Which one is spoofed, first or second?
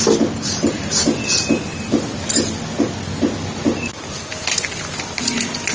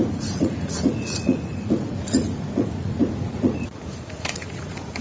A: second